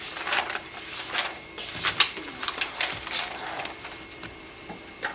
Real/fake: real